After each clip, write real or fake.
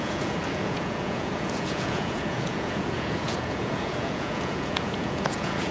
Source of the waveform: fake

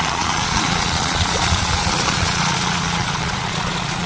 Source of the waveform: fake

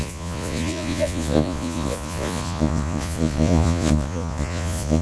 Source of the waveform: fake